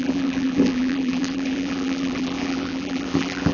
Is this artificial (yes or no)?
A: yes